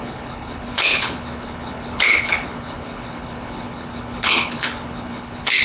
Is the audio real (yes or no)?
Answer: no